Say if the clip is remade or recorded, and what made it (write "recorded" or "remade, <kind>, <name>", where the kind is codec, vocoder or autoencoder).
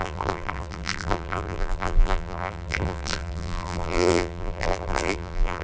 remade, vocoder, BigVGAN v2